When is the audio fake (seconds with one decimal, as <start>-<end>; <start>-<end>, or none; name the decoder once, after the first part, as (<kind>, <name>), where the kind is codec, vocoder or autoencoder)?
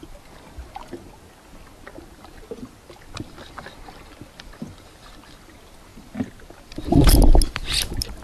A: none